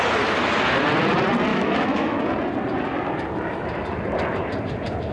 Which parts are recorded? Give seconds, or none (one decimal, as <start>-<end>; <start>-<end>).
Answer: 0.0-1.5; 2.2-5.1